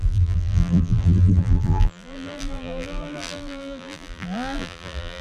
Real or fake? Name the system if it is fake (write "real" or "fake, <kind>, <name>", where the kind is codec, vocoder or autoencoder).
fake, vocoder, BigVGAN v2